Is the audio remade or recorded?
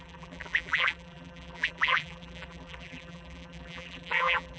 remade